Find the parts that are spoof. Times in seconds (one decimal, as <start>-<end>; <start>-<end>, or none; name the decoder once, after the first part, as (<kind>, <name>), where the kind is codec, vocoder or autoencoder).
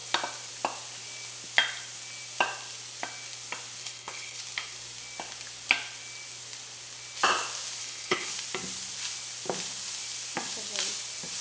3.8-4.4 (codec, HILCodec); 7.8-8.3